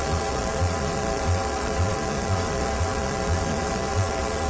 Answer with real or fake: fake